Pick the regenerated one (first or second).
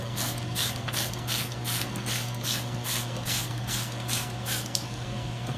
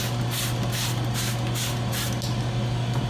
first